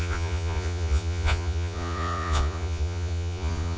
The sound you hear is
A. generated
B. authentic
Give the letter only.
A